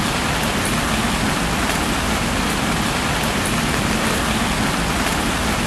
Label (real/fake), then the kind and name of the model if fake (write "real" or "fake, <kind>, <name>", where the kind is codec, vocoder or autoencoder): real